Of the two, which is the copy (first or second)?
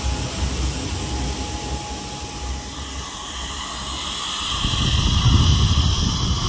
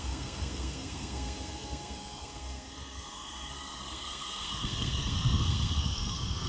second